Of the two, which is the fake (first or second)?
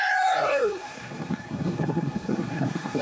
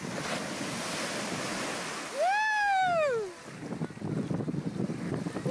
first